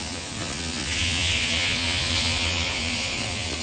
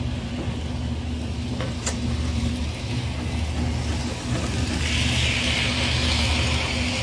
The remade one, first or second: first